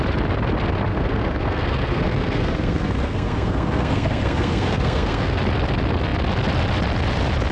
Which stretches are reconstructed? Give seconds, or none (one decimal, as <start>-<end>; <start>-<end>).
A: 0.9-5.4